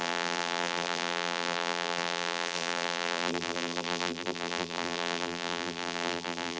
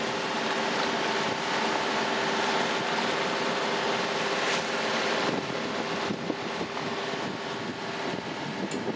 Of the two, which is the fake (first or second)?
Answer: first